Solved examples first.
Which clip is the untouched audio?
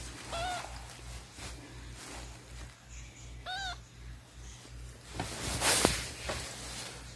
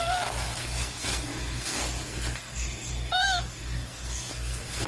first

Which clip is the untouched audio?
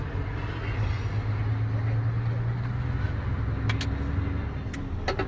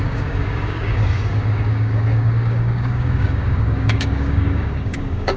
first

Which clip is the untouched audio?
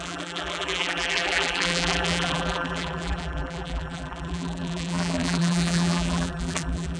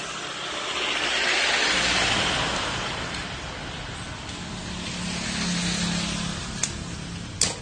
second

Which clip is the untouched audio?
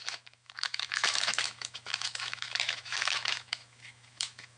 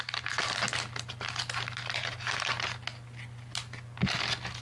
second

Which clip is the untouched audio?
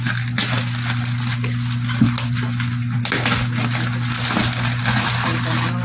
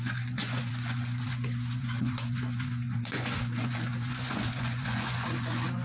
first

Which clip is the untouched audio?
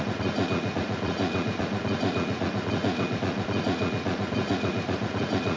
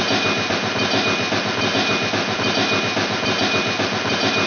second